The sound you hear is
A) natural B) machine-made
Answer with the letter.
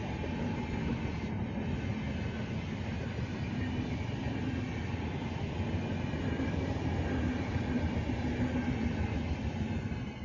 A